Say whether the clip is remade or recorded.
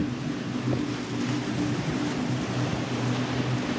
recorded